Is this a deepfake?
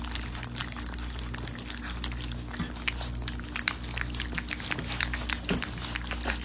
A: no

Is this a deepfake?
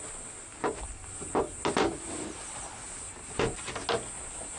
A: no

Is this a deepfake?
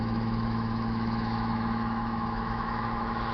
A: yes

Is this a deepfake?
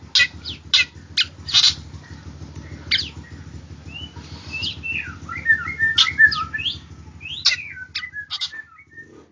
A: no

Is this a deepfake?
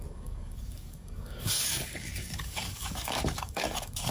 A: yes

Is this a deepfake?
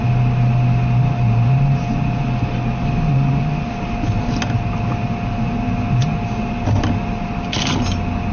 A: no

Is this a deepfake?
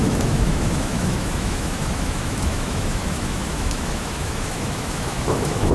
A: yes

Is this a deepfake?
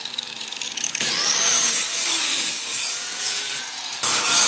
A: yes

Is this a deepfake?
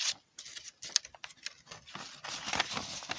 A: no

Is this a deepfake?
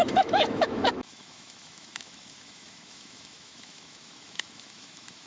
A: yes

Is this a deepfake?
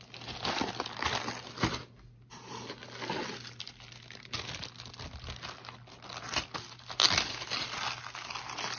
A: no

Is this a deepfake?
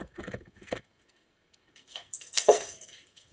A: yes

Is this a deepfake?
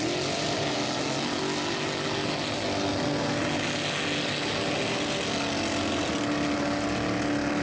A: no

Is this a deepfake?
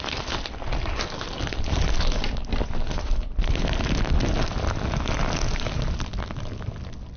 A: no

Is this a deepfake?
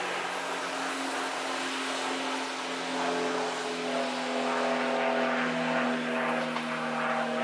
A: no